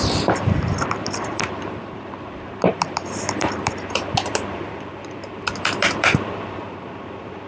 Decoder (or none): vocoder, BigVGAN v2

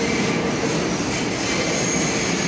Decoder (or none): none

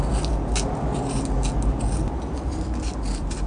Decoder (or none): none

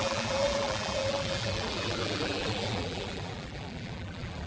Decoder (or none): vocoder, BigVGAN v2